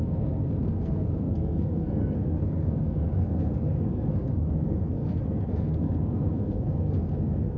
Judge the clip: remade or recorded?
remade